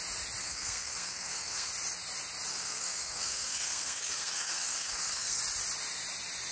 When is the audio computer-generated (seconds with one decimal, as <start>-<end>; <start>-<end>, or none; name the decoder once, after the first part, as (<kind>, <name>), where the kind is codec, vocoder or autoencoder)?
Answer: 0.4-1.7 (codec, SNAC); 2.5-5.4